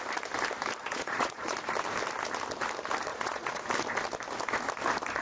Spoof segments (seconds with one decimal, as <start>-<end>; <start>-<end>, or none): 0.8-1.5; 3.1-3.6